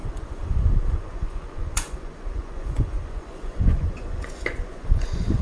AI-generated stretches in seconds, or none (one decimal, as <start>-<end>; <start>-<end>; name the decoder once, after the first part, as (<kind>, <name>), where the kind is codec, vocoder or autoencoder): 0.0-5.4 (vocoder, Vocos)